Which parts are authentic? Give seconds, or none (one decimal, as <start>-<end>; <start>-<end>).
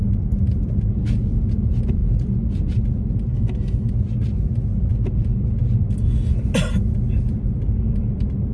0.0-3.3; 3.9-8.5